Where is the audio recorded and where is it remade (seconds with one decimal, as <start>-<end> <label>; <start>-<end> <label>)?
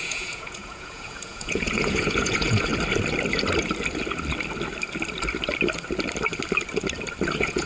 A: 0.0-2.7 remade; 2.7-7.3 recorded; 7.3-7.7 remade